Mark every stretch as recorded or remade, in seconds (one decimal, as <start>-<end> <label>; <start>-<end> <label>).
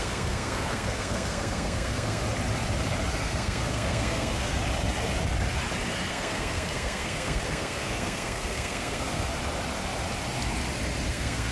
0.0-2.2 remade; 2.2-3.2 recorded; 3.2-4.5 remade; 4.5-6.1 recorded; 6.1-9.3 remade; 9.3-11.1 recorded; 11.1-11.5 remade